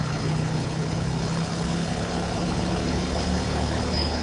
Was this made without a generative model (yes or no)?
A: no